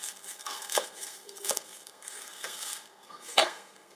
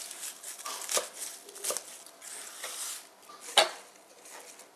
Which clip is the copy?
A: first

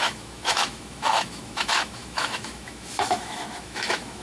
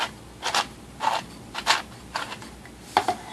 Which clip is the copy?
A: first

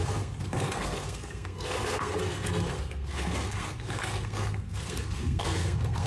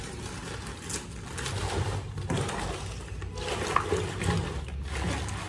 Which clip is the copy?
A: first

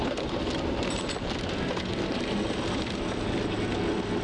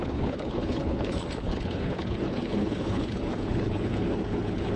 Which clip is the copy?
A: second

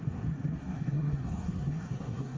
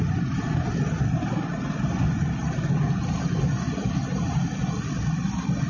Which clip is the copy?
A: first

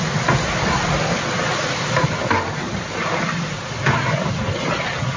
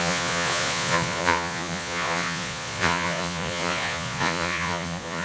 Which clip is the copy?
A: second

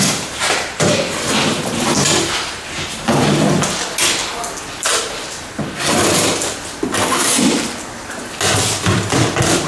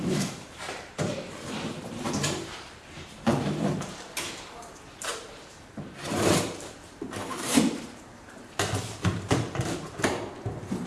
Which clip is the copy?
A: second